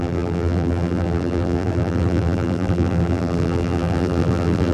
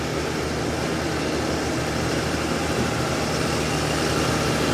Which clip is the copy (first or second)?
first